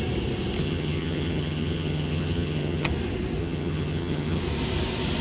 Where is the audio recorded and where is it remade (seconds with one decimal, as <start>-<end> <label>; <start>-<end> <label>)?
0.0-0.6 recorded; 0.6-2.9 remade; 2.9-3.4 recorded; 3.4-4.4 remade; 4.4-5.2 recorded